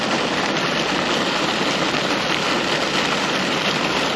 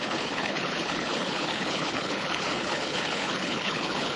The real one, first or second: first